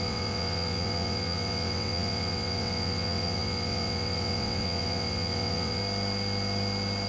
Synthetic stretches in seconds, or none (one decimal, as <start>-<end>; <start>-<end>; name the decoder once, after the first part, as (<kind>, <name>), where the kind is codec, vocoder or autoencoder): 0.0-5.8 (vocoder, WaveNeXt)